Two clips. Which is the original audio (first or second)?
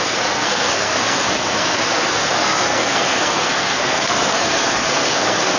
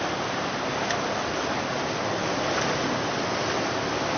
second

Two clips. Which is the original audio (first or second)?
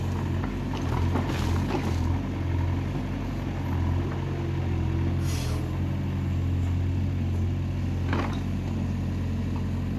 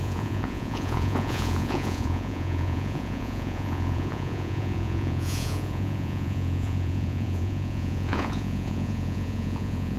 first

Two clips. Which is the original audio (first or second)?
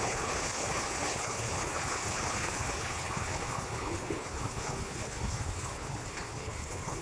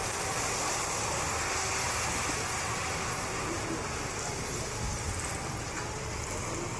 second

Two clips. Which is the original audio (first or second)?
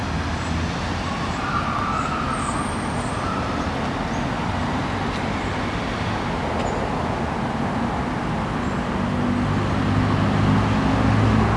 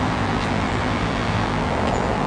first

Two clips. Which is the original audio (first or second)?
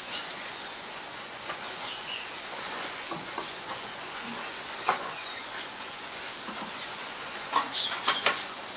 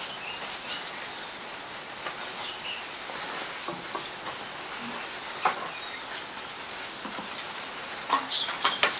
second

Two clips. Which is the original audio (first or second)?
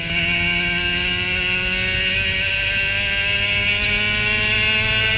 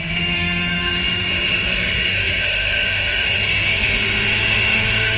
first